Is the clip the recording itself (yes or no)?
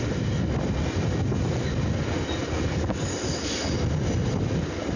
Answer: yes